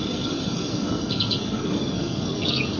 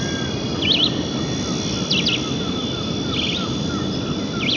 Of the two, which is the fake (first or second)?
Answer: first